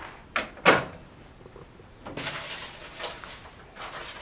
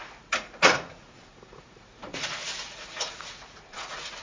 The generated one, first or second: second